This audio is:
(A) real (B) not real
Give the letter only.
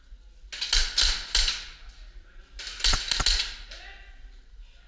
A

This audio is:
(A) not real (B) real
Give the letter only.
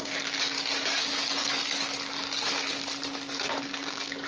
A